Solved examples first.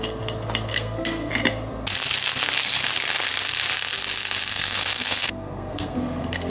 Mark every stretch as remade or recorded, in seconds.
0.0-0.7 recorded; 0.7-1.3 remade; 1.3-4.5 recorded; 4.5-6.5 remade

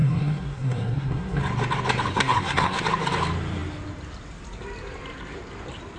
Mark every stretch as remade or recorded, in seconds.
0.0-1.4 remade; 1.4-2.1 recorded; 2.1-2.8 remade; 2.8-6.0 recorded

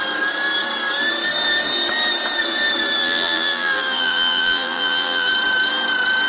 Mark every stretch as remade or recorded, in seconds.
0.0-3.0 recorded; 3.0-5.3 remade; 5.3-6.3 recorded

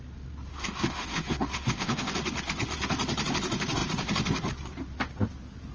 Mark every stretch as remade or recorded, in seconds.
0.0-0.5 recorded; 0.5-2.1 remade; 2.1-5.7 recorded

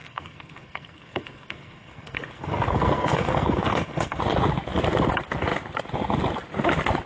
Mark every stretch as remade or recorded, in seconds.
0.0-4.2 remade; 4.2-7.1 recorded

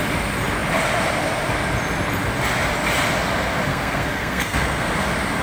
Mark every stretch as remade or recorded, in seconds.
0.0-3.7 recorded; 3.7-4.9 remade; 4.9-5.4 recorded